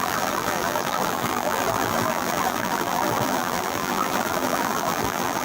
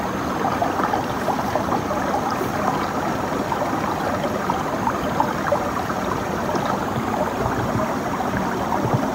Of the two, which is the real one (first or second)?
second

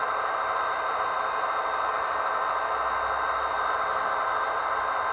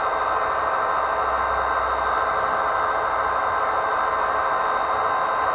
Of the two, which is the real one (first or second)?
second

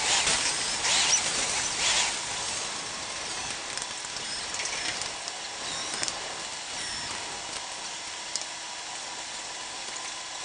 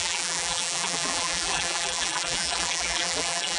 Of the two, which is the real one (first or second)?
first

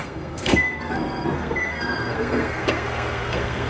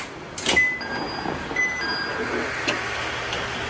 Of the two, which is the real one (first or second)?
second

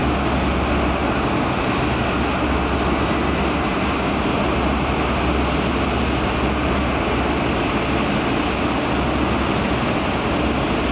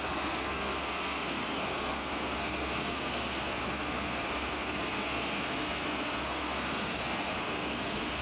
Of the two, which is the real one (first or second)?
first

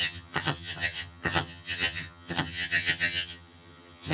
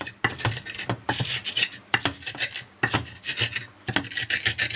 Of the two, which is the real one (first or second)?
second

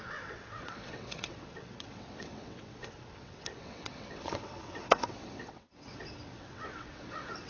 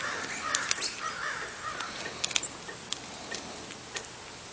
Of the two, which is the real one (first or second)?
second